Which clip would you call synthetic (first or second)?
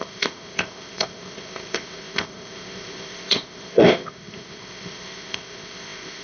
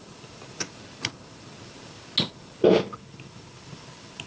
first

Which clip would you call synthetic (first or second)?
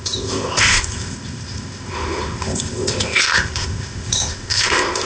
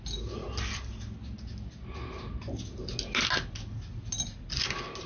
first